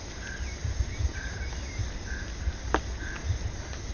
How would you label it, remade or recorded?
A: recorded